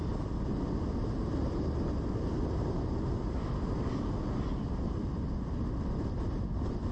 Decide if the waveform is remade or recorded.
recorded